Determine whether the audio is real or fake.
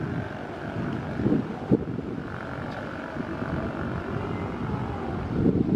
real